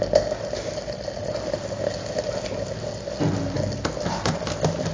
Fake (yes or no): no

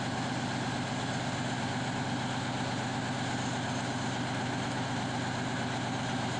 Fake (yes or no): no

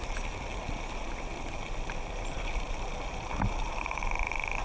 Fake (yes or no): no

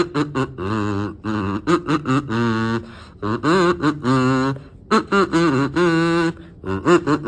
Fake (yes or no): no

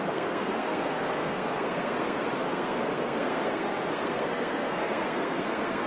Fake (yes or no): yes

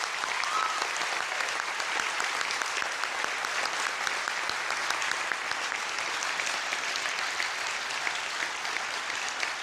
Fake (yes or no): no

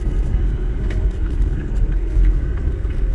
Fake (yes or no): yes